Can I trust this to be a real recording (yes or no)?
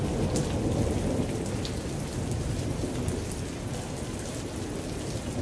yes